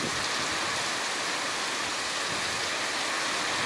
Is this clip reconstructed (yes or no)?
no